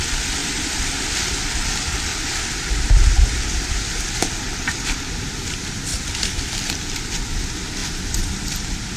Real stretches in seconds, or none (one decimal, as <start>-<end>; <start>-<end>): 0.0-9.0